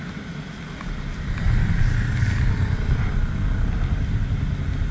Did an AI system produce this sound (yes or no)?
no